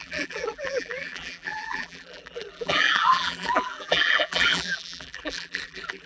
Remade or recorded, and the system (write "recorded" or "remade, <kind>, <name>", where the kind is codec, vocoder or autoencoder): remade, vocoder, BigVGAN v2